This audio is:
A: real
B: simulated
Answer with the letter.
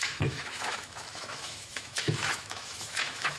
B